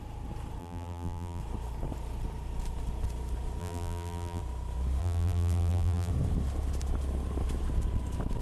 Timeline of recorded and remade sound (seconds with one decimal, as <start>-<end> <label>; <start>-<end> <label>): 0.0-0.6 recorded; 0.6-1.4 remade; 1.4-3.6 recorded; 3.6-4.4 remade; 4.4-5.0 recorded; 5.0-6.1 remade; 6.1-8.4 recorded